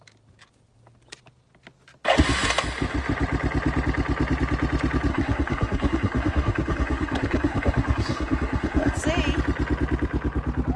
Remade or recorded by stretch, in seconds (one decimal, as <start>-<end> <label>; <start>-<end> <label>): 0.0-5.1 recorded; 5.1-9.0 remade; 9.0-10.8 recorded